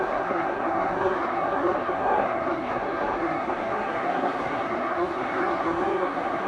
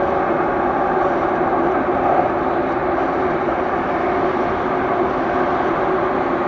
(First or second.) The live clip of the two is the second